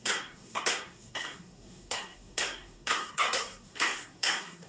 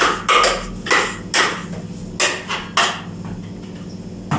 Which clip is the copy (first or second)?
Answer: first